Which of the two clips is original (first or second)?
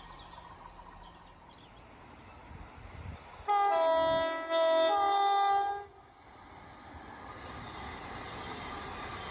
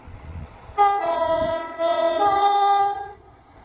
first